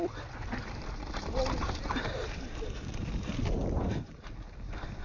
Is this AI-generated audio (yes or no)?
no